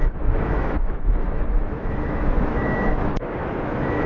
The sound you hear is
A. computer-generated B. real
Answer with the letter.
A